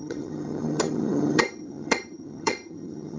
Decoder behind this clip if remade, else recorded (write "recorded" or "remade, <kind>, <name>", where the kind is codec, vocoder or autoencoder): remade, vocoder, HiFi-GAN